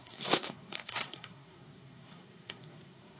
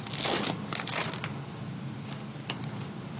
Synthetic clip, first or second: first